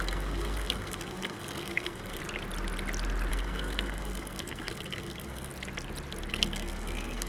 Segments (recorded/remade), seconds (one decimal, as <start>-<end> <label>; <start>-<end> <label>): 0.0-2.2 remade; 2.2-3.3 recorded; 3.3-5.5 remade; 5.5-6.3 recorded; 6.3-7.3 remade